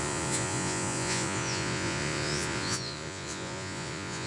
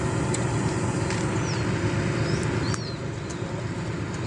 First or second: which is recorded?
second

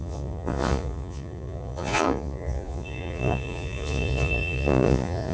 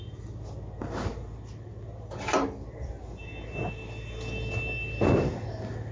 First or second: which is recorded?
second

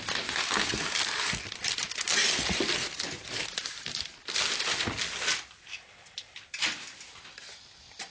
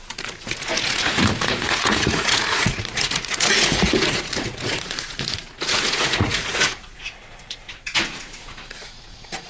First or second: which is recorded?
first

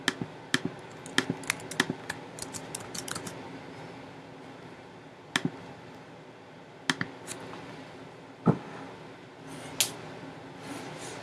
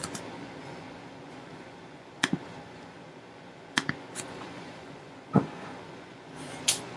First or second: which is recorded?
first